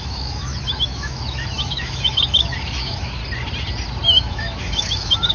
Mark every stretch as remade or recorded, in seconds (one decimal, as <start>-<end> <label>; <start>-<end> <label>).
0.0-3.2 remade; 3.2-4.2 recorded; 4.2-5.3 remade